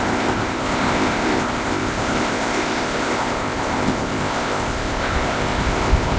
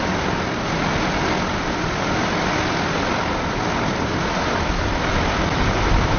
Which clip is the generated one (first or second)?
first